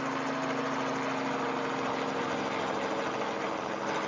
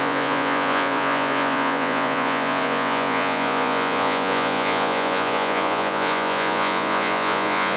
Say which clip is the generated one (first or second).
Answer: second